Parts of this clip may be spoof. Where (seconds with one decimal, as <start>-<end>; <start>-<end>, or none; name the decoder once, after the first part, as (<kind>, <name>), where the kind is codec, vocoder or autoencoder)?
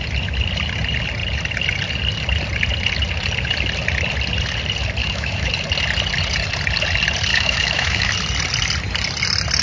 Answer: 5.0-5.5 (autoencoder, DAC-VAE); 7.3-8.1